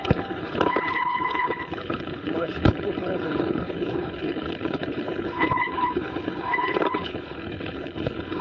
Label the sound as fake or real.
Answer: fake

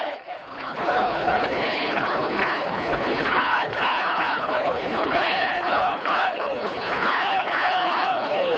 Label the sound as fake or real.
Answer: fake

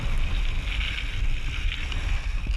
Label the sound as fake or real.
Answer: real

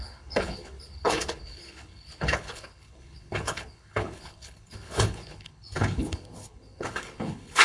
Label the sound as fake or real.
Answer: fake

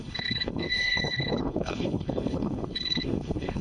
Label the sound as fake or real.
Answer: fake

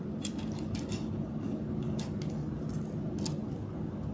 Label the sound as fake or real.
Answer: real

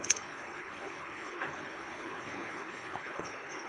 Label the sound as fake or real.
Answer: fake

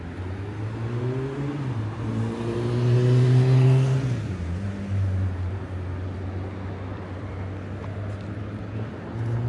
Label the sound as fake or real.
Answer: real